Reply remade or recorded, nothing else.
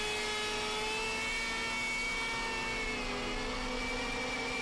recorded